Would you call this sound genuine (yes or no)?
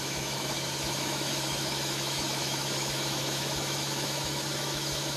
no